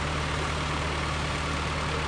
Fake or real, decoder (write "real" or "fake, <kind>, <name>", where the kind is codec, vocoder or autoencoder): fake, vocoder, BigVGAN v2